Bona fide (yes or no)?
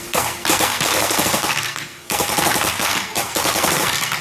no